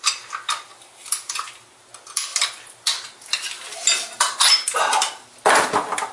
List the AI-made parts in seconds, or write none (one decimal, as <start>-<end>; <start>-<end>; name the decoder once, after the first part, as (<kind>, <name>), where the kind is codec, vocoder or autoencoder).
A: none